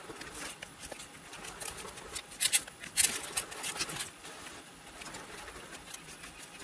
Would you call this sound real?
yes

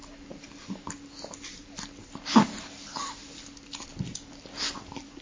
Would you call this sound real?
yes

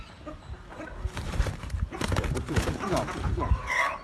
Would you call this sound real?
no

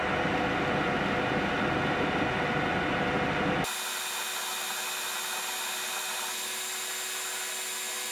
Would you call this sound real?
yes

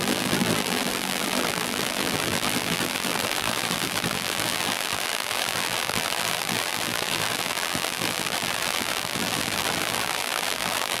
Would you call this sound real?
no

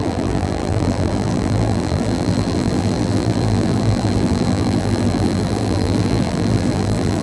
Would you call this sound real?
no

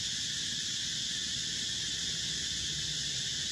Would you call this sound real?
yes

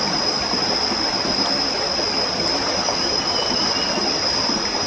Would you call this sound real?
yes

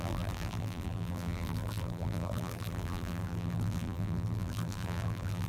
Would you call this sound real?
no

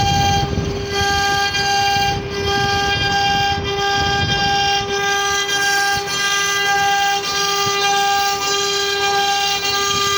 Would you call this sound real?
yes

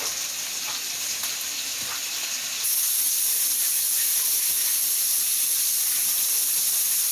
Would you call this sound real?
yes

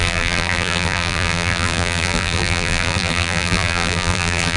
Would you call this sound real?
no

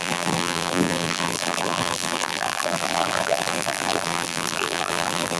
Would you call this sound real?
no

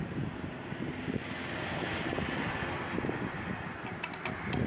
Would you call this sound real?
yes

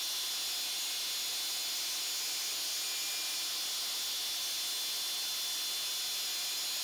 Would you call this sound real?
yes